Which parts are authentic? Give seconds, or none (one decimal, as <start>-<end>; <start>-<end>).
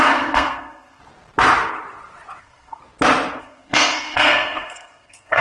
1.0-2.4; 2.8-3.4